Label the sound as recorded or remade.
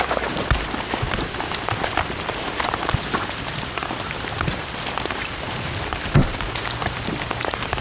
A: remade